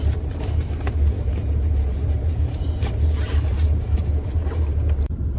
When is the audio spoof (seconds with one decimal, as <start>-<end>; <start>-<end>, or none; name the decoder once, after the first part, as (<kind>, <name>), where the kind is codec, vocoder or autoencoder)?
0.0-5.4 (vocoder, BigVGAN v2)

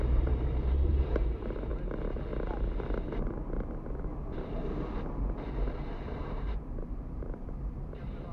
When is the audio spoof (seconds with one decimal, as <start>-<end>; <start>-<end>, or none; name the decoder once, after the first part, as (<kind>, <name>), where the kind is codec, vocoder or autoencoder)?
0.0-1.7 (vocoder, BigVGAN v2); 5.7-8.3

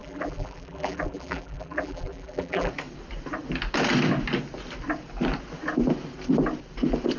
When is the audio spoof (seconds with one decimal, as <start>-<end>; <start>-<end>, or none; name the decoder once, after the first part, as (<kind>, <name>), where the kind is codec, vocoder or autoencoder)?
0.0-2.7 (vocoder, BigVGAN v2)